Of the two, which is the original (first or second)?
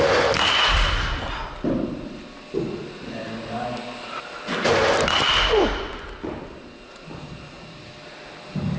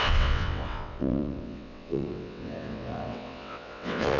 first